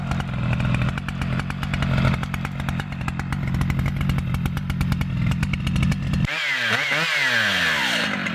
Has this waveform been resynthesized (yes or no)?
no